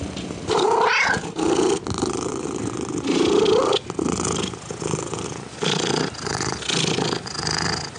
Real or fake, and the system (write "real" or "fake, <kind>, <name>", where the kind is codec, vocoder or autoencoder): real